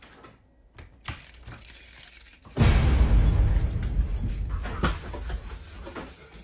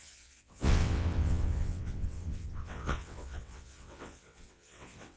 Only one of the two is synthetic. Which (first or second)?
second